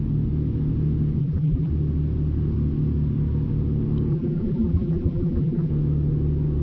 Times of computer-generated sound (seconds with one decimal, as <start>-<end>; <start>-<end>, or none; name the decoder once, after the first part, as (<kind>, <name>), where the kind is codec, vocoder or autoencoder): 1.2-1.7 (vocoder, BigVGAN v2); 4.1-5.7